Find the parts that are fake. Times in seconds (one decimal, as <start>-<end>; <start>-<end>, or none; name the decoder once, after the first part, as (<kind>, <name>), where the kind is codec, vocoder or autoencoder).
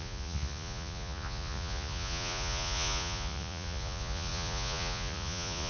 0.0-5.7 (vocoder, Vocos)